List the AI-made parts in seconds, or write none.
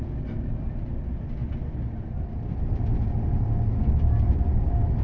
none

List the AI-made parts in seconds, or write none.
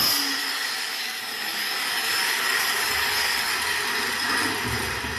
0.4-3.5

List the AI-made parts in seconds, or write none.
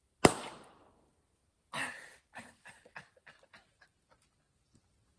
none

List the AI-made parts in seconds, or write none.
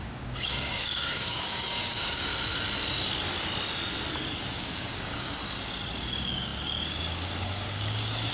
0.0-2.3; 4.4-5.4; 6.0-8.3